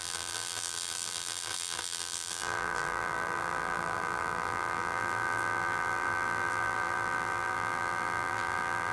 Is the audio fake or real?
fake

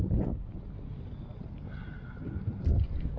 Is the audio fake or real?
real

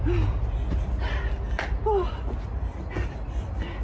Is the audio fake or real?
real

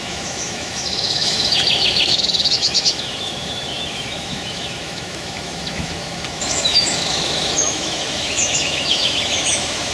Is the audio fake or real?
fake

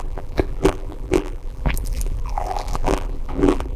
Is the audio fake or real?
fake